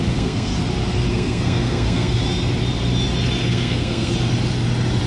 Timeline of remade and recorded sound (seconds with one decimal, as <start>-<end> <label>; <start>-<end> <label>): 0.0-0.5 remade; 0.5-1.1 recorded; 1.1-2.2 remade; 2.2-3.5 recorded; 3.5-4.1 remade; 4.1-5.1 recorded